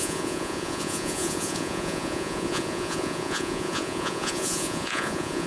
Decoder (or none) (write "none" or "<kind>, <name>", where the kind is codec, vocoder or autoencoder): vocoder, Vocos